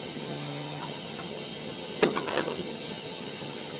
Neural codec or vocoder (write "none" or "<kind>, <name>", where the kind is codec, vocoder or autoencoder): vocoder, HiFi-GAN